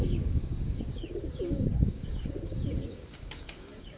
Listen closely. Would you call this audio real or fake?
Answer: fake